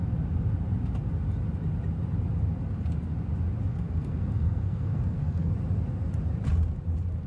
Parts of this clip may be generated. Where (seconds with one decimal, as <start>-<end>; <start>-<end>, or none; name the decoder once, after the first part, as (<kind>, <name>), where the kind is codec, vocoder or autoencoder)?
3.7-5.5 (codec, SNAC)

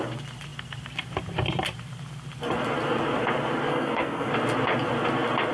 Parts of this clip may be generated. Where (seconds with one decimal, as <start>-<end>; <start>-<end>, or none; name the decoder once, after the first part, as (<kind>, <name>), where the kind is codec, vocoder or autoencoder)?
3.7-4.3 (codec, SNAC)

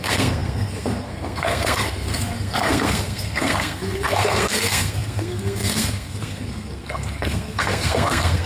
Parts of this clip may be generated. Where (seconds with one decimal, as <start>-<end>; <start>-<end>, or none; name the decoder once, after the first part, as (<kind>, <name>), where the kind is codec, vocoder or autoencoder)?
0.0-8.5 (codec, SNAC)

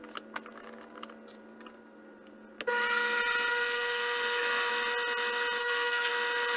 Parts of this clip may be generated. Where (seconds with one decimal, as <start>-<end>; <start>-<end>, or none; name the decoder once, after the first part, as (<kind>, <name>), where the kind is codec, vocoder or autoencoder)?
3.5-4.7 (codec, SNAC); 5.6-6.1